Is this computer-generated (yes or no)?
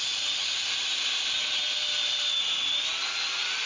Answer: no